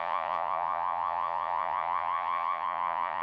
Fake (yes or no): yes